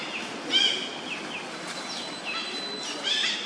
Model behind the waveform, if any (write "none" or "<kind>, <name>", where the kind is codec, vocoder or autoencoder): none